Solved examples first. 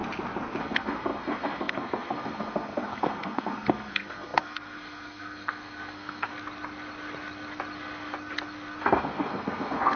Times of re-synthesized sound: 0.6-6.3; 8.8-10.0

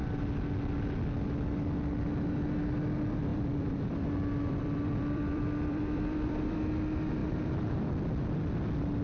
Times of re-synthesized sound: 3.3-6.6; 7.2-7.9

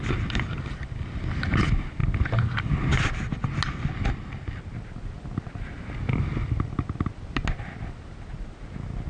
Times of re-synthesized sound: none

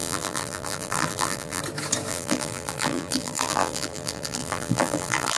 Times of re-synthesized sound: 0.0-1.6; 2.1-5.4

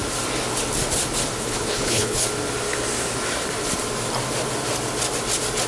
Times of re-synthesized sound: 1.4-2.2